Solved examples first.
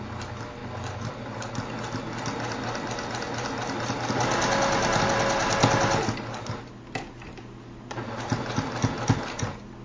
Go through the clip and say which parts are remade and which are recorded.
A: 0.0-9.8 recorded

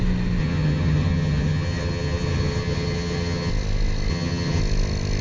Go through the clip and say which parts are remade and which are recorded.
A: 0.0-0.4 recorded; 0.4-3.5 remade; 3.5-4.1 recorded; 4.1-4.6 remade; 4.6-5.2 recorded

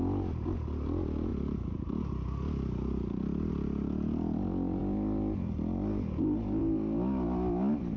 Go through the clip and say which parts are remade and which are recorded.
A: 0.0-8.0 recorded